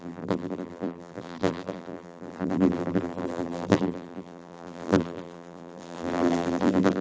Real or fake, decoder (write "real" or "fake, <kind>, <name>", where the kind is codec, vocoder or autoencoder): fake, vocoder, BigVGAN v2